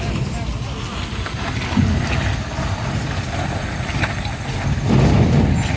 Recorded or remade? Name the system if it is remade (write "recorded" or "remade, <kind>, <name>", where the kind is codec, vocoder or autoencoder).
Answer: recorded